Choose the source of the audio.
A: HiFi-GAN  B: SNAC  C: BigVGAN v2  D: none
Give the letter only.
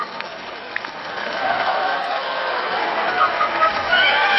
B